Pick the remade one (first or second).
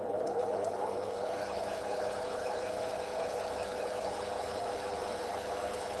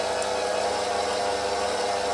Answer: first